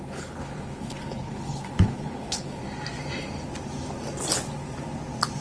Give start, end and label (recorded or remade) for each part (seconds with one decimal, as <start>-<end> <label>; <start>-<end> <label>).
0.0-2.6 remade; 2.6-5.4 recorded

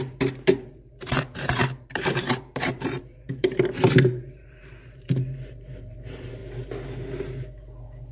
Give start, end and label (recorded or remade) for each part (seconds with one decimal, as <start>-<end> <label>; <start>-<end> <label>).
0.0-6.4 remade; 6.4-8.1 recorded

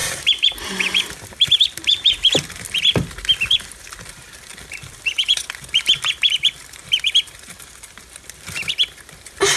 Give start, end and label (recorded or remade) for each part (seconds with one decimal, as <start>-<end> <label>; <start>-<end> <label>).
0.0-9.6 recorded

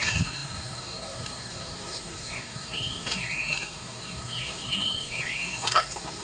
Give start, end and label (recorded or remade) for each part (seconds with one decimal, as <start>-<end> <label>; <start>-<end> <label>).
0.0-6.2 remade

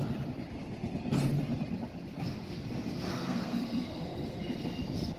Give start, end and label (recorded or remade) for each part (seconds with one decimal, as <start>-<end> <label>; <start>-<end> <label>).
0.0-3.1 recorded; 3.1-4.4 remade; 4.4-5.2 recorded